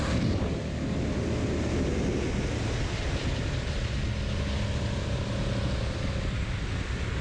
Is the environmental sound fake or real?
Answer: real